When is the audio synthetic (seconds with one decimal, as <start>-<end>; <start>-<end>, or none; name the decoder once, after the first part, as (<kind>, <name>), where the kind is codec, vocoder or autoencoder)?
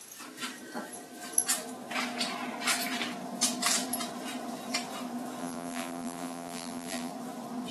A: 5.4-7.1 (vocoder, BigVGAN v2)